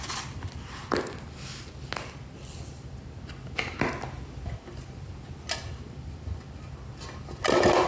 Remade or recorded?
recorded